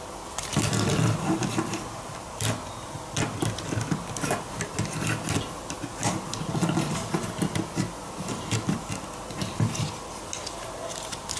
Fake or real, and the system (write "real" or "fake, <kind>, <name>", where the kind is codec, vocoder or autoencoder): real